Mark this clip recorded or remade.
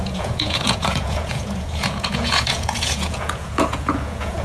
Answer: remade